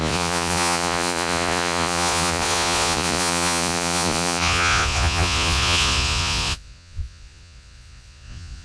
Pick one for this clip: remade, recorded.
remade